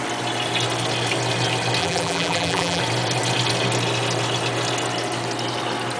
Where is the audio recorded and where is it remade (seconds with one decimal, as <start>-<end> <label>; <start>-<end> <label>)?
0.0-1.8 recorded; 1.8-2.8 remade; 2.8-6.0 recorded